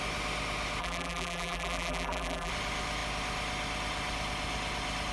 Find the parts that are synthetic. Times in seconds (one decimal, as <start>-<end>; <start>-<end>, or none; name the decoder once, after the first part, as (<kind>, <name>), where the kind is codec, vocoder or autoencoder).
0.8-2.5 (vocoder, BigVGAN v2)